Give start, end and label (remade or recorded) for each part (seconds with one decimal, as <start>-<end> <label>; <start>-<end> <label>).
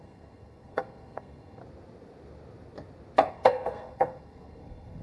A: 0.0-1.6 remade; 1.6-3.3 recorded; 3.3-5.0 remade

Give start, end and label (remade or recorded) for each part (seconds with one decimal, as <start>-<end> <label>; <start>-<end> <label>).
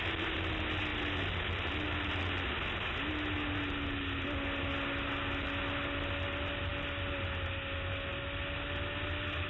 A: 0.0-9.5 recorded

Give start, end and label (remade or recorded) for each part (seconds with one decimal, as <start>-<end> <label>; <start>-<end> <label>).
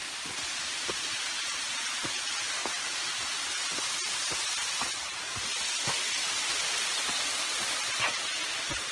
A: 0.0-8.9 recorded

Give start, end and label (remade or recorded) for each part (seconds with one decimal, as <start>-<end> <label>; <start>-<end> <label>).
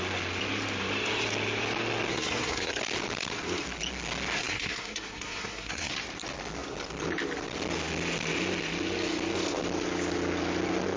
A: 0.0-2.1 recorded; 2.1-2.8 remade; 2.8-4.4 recorded; 4.4-5.9 remade; 5.9-11.0 recorded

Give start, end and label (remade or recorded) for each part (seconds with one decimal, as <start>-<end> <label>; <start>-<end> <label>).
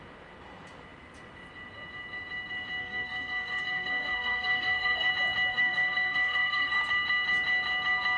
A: 0.0-2.8 recorded; 2.8-5.1 remade; 5.1-5.5 recorded; 5.5-6.8 remade; 6.8-8.2 recorded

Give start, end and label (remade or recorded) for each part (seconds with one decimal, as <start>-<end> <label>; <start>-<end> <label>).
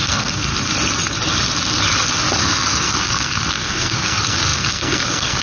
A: 0.0-0.5 remade; 0.5-2.4 recorded; 2.4-5.4 remade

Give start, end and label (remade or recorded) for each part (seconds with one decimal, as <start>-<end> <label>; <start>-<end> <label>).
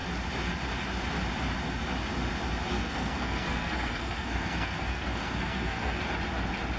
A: 0.0-2.7 recorded; 2.7-6.0 remade; 6.0-6.8 recorded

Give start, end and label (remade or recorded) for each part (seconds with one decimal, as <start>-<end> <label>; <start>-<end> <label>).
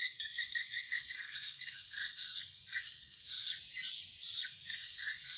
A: 0.0-3.5 remade; 3.5-4.5 recorded; 4.5-5.4 remade